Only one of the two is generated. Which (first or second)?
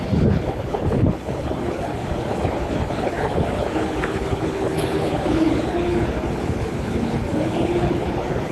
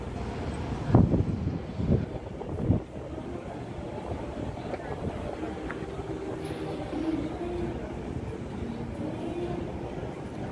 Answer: first